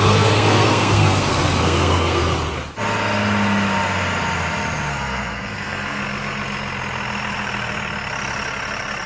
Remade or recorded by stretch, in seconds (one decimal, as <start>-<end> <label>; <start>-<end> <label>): 0.0-2.2 remade; 2.2-4.9 recorded; 4.9-6.0 remade; 6.0-9.1 recorded